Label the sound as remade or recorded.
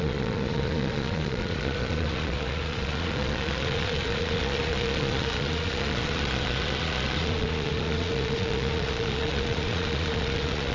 remade